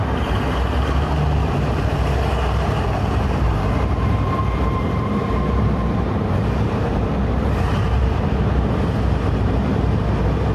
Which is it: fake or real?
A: fake